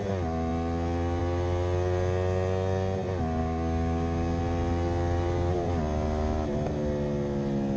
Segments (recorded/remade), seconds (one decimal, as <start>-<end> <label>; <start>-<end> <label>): 0.0-3.4 recorded; 3.4-4.4 remade; 4.4-7.8 recorded